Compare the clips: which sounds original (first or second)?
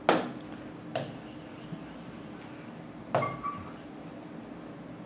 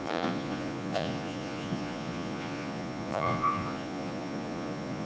first